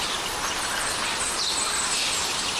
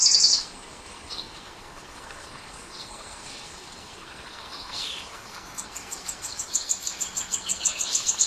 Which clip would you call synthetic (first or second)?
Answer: second